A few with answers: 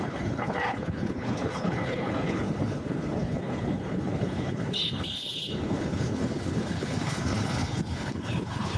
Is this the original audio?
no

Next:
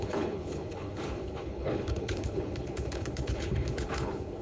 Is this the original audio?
no